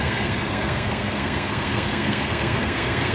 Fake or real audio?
fake